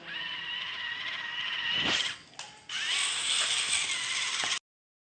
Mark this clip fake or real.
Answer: real